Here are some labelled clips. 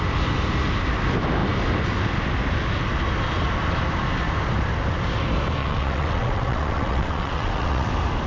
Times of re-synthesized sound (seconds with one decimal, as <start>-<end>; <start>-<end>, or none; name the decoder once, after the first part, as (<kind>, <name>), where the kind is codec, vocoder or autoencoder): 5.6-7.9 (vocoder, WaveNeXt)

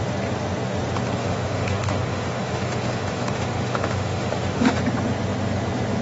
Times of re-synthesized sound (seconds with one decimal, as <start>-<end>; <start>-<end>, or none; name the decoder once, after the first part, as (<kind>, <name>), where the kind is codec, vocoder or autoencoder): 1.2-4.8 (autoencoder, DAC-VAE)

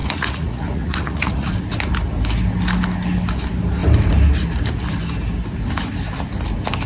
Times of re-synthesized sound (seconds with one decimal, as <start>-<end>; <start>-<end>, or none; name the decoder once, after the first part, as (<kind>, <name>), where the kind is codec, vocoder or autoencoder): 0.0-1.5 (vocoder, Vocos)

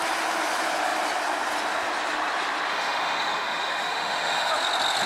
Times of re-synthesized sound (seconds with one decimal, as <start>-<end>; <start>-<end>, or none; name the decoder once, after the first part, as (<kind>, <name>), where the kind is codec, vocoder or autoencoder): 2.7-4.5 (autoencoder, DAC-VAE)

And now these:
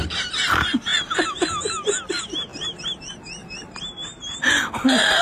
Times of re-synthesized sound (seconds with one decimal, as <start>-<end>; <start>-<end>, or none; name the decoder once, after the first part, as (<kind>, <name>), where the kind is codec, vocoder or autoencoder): 3.4-4.5 (vocoder, BigVGAN v2)